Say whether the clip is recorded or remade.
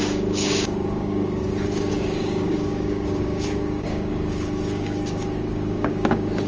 remade